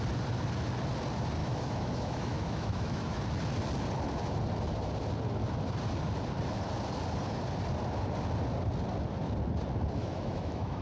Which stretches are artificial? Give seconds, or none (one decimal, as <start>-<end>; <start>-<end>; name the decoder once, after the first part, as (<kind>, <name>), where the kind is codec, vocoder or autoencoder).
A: 1.4-3.2 (autoencoder, DAC-VAE); 10.0-10.8